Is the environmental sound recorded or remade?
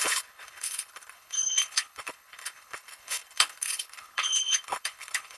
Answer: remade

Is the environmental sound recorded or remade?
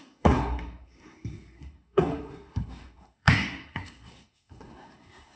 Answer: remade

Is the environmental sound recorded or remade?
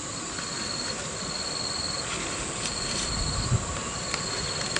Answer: recorded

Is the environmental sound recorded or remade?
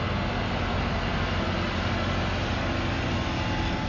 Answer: recorded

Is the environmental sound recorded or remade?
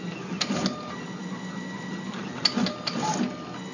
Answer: recorded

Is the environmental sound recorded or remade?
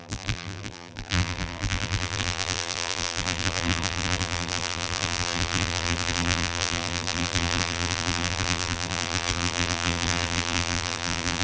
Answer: remade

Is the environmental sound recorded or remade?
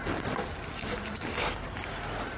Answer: recorded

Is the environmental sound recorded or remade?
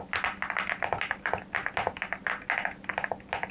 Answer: recorded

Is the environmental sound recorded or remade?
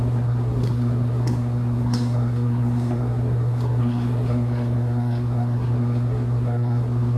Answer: remade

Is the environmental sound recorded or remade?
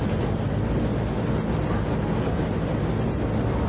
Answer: recorded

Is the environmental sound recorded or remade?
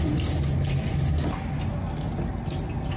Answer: recorded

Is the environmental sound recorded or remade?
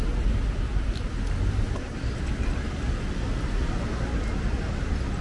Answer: recorded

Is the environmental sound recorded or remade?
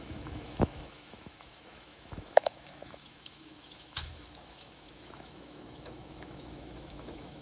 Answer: remade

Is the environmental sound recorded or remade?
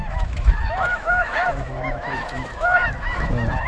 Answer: remade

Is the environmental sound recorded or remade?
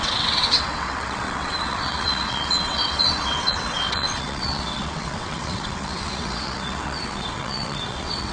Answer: remade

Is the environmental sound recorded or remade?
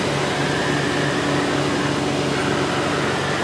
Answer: recorded